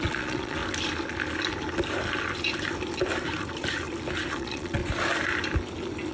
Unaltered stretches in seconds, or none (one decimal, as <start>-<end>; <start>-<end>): 0.6-4.3; 4.8-6.1